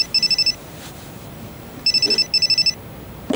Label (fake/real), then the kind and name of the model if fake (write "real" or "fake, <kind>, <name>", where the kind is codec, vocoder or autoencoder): real